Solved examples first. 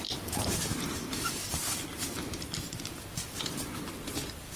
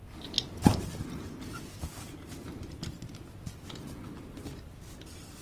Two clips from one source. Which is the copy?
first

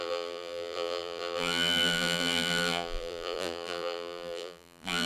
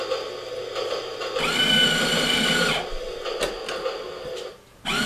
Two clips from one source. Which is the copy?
first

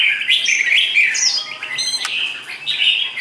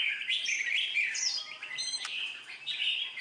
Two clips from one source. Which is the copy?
second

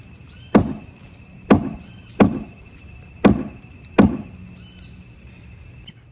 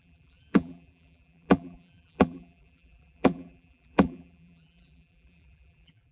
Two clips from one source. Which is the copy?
second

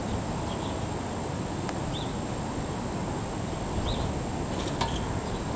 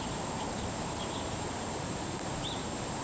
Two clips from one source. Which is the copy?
second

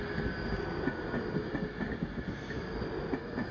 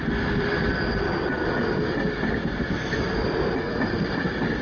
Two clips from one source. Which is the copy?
second